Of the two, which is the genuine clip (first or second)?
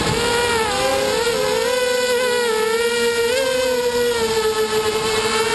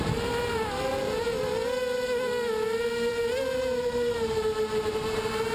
first